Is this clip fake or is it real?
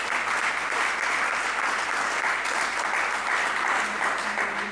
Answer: real